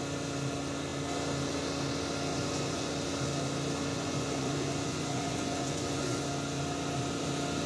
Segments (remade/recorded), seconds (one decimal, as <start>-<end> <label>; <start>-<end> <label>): 0.0-2.3 recorded; 2.3-2.9 remade; 2.9-3.9 recorded; 3.9-6.2 remade; 6.2-7.7 recorded